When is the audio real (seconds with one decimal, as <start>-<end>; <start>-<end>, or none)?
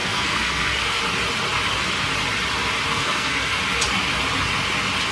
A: 1.0-2.9; 3.6-5.1